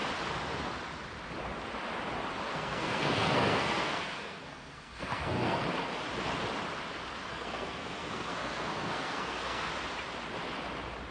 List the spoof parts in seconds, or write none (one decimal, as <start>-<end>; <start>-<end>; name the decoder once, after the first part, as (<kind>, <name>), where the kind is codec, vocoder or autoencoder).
2.5-5.6 (codec, SNAC); 7.3-9.7